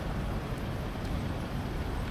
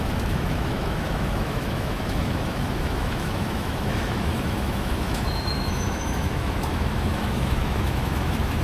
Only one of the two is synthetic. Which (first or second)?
second